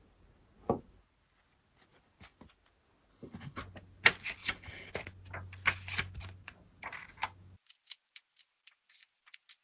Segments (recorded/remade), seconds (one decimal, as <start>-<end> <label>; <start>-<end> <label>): 0.0-3.1 recorded; 3.1-3.6 remade; 3.6-4.4 recorded; 4.4-4.9 remade; 4.9-9.6 recorded